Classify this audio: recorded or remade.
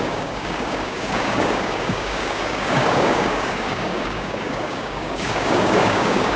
remade